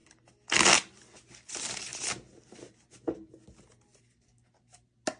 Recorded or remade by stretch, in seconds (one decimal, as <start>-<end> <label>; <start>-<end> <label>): 0.0-5.2 recorded